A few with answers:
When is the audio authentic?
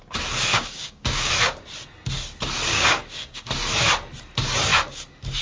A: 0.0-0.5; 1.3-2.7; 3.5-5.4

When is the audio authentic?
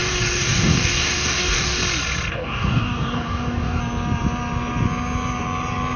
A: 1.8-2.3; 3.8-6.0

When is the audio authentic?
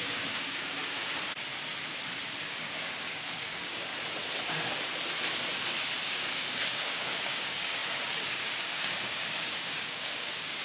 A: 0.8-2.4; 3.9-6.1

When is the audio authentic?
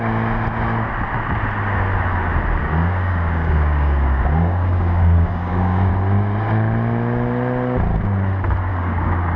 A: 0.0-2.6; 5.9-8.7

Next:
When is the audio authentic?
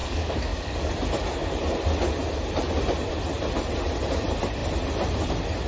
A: 0.9-5.7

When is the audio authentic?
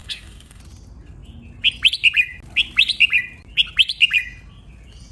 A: 0.6-5.1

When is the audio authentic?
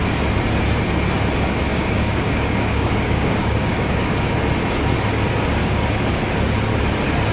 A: 0.0-1.7; 4.3-5.6; 6.2-7.3